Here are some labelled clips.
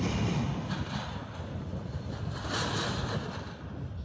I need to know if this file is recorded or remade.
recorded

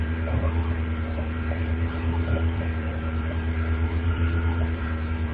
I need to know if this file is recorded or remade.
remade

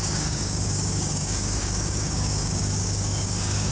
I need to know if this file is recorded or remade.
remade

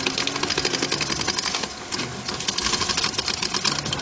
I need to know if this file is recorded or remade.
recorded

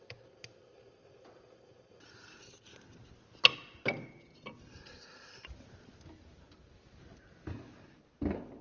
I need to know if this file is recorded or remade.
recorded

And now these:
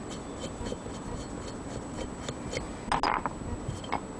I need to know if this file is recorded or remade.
recorded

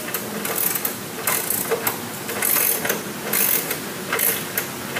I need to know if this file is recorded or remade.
recorded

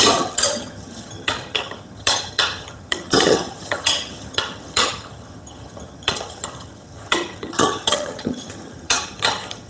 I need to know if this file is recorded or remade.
remade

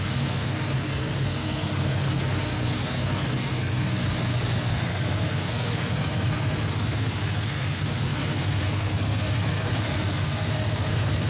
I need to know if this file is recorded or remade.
remade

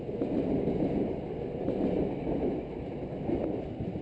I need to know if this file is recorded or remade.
recorded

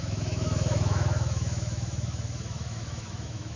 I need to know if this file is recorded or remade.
remade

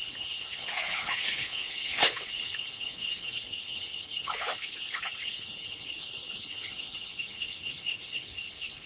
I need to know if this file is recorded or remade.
remade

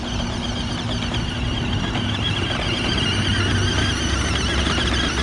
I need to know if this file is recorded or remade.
recorded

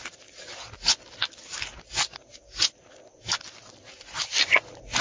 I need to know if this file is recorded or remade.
recorded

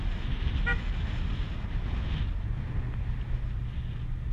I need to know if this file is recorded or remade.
recorded